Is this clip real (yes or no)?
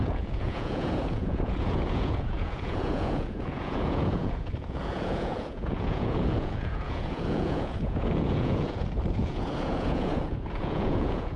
no